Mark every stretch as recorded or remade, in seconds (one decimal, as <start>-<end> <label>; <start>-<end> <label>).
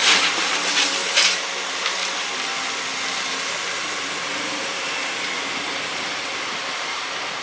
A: 0.0-1.9 recorded; 1.9-2.5 remade; 2.5-3.4 recorded; 3.4-7.4 remade